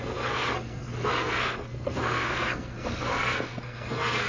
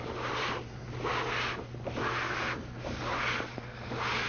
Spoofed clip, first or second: first